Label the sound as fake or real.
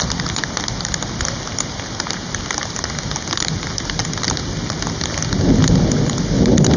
real